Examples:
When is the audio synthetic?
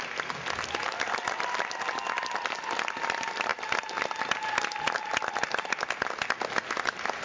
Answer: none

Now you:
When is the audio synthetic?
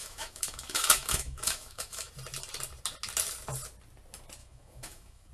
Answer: 0.0-2.1; 4.4-5.3